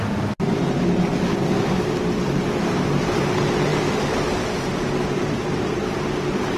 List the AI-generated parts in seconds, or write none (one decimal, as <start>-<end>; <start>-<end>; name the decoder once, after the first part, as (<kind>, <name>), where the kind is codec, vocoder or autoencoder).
none